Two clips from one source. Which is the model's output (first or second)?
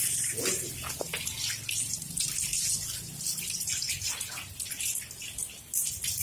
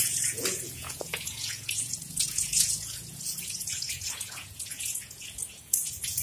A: second